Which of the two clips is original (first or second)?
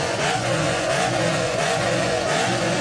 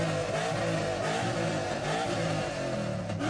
second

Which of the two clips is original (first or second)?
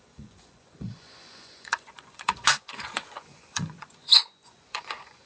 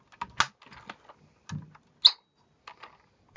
second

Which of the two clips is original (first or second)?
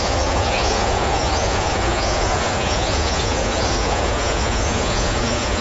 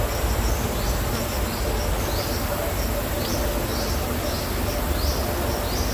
second